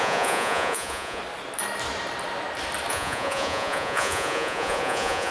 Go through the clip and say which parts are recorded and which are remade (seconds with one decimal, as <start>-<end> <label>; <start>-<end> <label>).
0.0-1.2 remade; 1.2-2.9 recorded; 2.9-5.3 remade